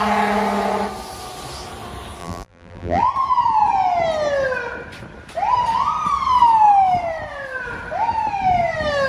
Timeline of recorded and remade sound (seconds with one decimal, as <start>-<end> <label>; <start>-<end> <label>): 0.0-2.2 recorded; 2.2-3.0 remade; 3.0-9.1 recorded